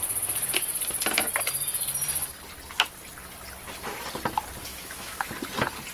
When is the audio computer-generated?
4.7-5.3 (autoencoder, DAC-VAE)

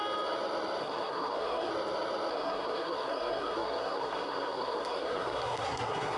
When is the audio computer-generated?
0.8-1.7 (codec, SNAC); 2.3-6.2

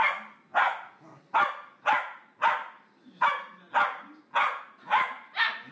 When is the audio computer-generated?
none

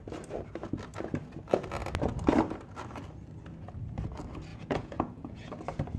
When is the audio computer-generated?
4.5-5.5 (vocoder, Vocos)